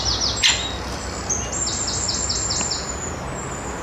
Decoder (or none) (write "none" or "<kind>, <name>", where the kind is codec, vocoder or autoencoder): none